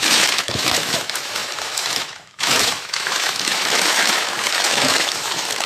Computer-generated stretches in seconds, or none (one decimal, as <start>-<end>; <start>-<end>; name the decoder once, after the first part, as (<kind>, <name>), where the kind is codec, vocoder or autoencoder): 0.0-5.7 (autoencoder, DAC-VAE)